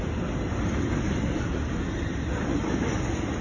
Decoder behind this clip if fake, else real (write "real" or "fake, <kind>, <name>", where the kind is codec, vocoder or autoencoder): real